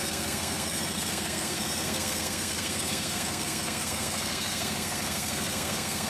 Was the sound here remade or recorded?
remade